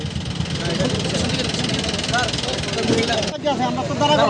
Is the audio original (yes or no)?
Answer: yes